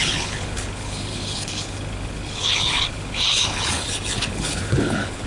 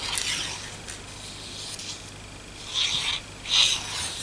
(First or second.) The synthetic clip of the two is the first